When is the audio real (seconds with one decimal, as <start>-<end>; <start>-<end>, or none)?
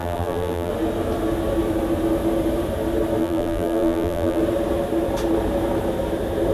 0.7-3.2; 4.4-6.5